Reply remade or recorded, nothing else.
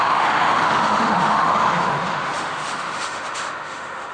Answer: remade